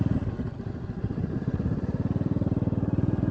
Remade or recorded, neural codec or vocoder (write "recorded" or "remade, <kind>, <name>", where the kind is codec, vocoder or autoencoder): recorded